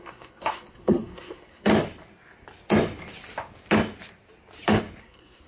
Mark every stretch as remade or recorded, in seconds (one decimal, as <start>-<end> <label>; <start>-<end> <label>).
0.0-1.7 remade; 1.7-5.0 recorded; 5.0-5.5 remade